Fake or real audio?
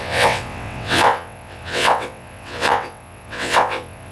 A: fake